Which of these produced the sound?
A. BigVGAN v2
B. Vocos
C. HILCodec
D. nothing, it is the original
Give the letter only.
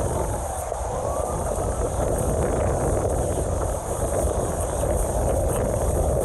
D